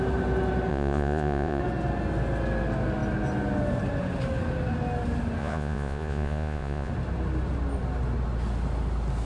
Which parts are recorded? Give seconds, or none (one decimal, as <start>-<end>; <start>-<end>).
0.0-0.7; 1.6-5.4; 6.9-9.3